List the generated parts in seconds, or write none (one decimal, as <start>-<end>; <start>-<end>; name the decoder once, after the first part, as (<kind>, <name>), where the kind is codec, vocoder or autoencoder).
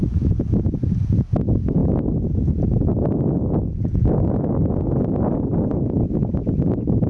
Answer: none